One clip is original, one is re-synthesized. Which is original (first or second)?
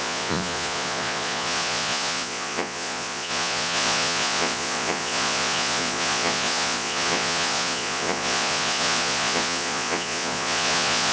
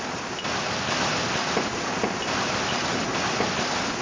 second